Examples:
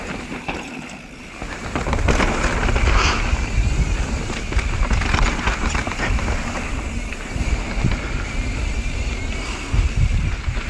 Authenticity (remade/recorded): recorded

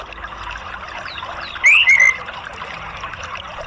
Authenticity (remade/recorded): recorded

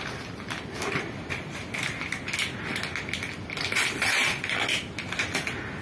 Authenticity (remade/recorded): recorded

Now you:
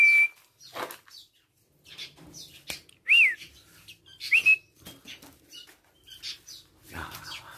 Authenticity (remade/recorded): recorded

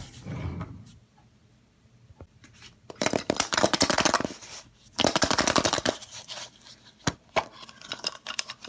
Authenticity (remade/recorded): remade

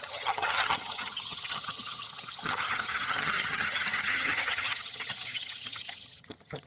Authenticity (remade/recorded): remade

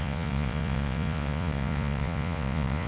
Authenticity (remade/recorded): remade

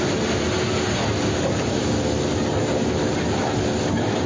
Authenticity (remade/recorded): recorded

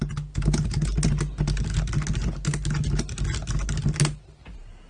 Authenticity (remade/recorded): recorded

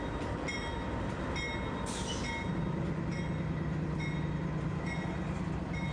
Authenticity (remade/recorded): recorded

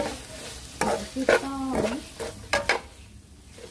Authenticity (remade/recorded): recorded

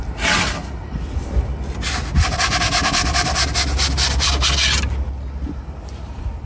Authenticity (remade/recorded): recorded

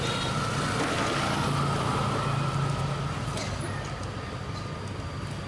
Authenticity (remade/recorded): recorded